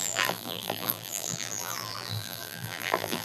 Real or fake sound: fake